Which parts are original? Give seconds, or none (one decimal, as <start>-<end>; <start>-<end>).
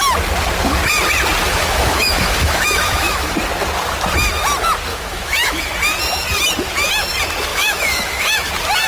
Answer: 0.0-1.4; 3.3-4.9; 5.7-7.5; 8.5-8.9